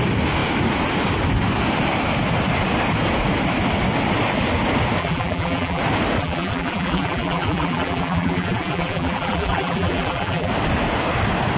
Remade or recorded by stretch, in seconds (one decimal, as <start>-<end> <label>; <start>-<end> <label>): 0.0-5.0 recorded; 5.0-5.8 remade; 5.8-6.2 recorded; 6.2-10.5 remade; 10.5-11.6 recorded